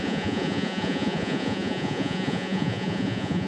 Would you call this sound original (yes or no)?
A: no